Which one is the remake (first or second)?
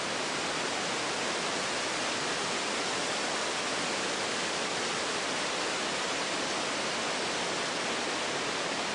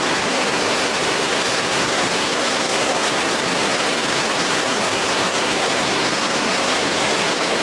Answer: second